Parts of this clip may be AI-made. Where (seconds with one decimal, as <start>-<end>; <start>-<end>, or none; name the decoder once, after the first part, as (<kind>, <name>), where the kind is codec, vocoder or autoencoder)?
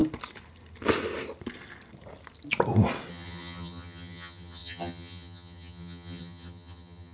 3.1-7.1 (vocoder, HiFi-GAN)